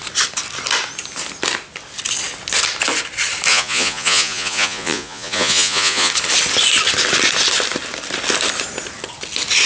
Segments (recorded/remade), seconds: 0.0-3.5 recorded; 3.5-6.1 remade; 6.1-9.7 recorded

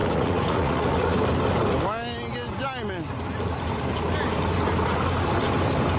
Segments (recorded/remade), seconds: 0.0-1.2 remade; 1.2-6.0 recorded

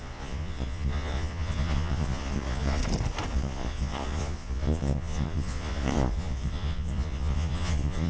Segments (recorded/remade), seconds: 0.0-2.8 remade; 2.8-3.3 recorded; 3.3-8.1 remade

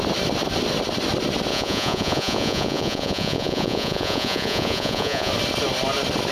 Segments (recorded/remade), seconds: 0.0-1.5 recorded; 1.5-5.3 remade; 5.3-6.3 recorded

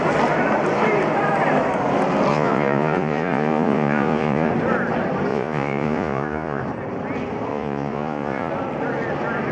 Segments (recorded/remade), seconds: 0.0-2.3 recorded; 2.3-4.5 remade; 4.5-5.3 recorded; 5.3-6.6 remade; 6.6-7.5 recorded; 7.5-8.5 remade; 8.5-9.5 recorded

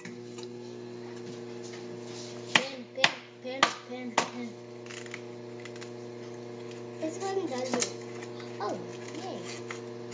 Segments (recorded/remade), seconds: 0.0-8.9 recorded; 8.9-9.6 remade; 9.6-10.1 recorded

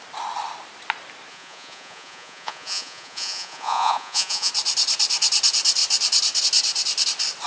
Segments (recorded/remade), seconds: 0.0-1.3 recorded; 1.3-4.5 remade; 4.5-7.5 recorded